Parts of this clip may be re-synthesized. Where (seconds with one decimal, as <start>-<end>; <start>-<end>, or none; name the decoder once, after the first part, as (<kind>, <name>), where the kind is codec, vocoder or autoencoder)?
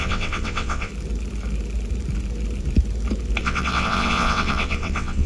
0.0-0.9 (vocoder, WaveNeXt); 3.4-5.3